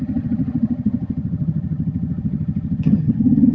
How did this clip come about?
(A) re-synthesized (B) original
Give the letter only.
A